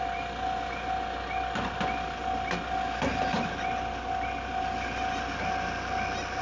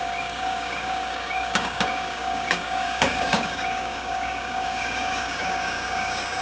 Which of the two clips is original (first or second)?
first